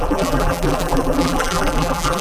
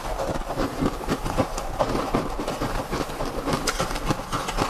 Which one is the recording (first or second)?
second